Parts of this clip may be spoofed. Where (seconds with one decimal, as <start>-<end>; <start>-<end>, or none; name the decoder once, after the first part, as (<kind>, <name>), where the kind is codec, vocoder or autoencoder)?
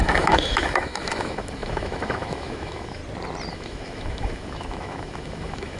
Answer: 0.0-3.0 (autoencoder, DAC-VAE); 3.5-5.8